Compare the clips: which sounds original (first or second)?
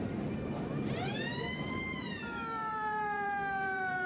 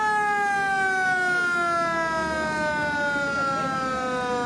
second